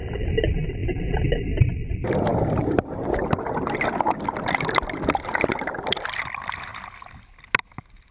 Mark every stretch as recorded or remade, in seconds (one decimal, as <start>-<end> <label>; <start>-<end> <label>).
0.0-8.1 recorded